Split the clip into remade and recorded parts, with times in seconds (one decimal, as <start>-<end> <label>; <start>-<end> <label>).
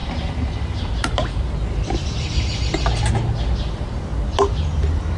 0.0-5.2 recorded